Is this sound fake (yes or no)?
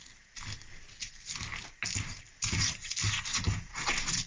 no